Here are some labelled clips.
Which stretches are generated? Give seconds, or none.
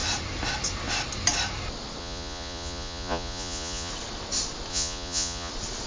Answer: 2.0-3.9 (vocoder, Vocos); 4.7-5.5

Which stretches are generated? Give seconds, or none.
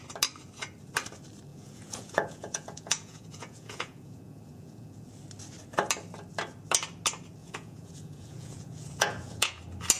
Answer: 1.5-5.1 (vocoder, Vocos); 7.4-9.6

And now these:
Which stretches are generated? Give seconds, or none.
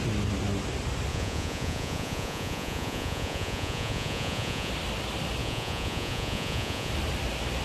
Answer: 1.1-4.7 (vocoder, Vocos); 5.4-6.9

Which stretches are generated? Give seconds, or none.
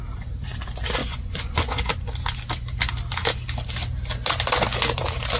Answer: 1.0-1.9 (vocoder, Vocos)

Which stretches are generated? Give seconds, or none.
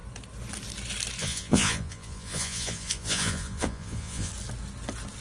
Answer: 1.2-4.3 (vocoder, Vocos)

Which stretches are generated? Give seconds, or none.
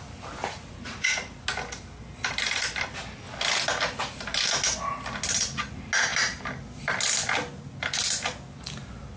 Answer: 0.4-1.4 (vocoder, Vocos)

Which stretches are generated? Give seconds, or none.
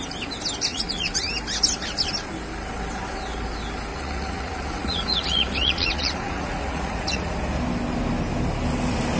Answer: 0.7-1.3 (vocoder, Vocos); 3.9-7.3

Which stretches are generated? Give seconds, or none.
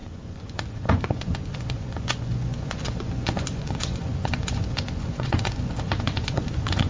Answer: 0.0-6.9 (vocoder, Vocos)